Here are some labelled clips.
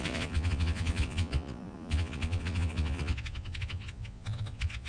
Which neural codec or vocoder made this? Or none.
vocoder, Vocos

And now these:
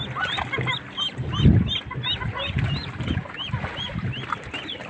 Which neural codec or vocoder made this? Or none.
none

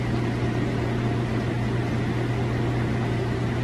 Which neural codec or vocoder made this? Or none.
none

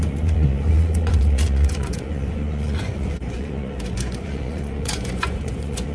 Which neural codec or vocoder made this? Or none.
vocoder, Vocos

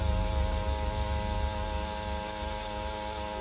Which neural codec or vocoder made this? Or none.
none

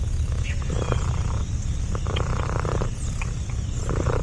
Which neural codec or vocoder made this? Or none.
none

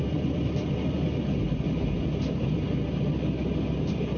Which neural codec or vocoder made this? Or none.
none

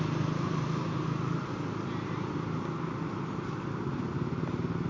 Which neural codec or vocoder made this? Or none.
none